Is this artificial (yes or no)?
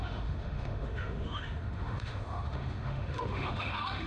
yes